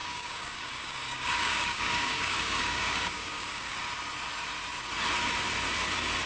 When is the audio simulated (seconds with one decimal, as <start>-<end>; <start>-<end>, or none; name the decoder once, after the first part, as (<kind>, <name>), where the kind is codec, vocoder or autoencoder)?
0.0-3.8 (codec, DAC)